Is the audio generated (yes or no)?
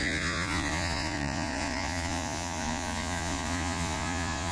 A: yes